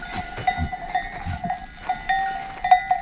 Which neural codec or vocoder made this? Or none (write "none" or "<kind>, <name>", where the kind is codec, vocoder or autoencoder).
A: none